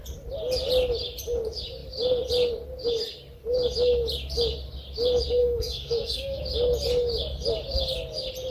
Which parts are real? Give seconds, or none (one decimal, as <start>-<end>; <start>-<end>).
0.0-5.4; 6.4-8.5